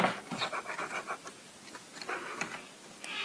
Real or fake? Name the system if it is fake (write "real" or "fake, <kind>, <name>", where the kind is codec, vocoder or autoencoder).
real